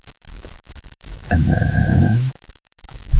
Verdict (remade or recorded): remade